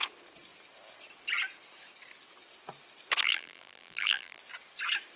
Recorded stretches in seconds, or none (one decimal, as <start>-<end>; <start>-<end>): 0.0-3.2; 4.4-5.2